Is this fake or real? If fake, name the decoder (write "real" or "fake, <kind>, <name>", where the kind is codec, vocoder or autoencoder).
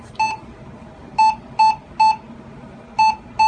real